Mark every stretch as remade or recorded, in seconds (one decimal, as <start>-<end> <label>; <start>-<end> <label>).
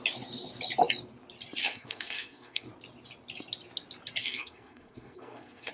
0.0-1.6 recorded; 1.6-2.7 remade; 2.7-4.2 recorded; 4.2-5.7 remade